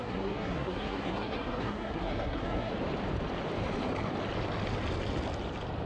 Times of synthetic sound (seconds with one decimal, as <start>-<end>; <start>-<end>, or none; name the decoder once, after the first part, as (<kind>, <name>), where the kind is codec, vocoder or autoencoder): 0.0-2.7 (codec, SNAC)